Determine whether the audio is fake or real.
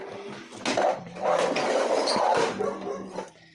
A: real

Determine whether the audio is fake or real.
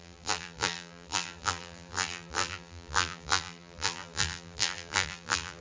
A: fake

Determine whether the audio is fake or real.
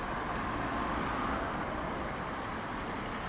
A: real